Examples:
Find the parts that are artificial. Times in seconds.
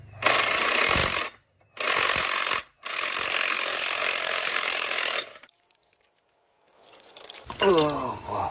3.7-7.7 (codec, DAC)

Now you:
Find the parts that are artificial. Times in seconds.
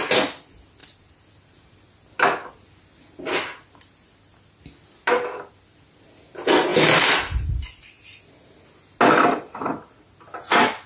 none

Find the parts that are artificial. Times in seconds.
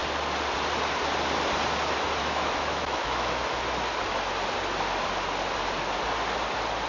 2.2-3.4 (autoencoder, DAC-VAE)